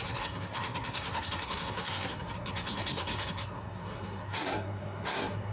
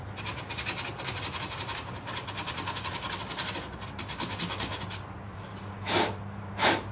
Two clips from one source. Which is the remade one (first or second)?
first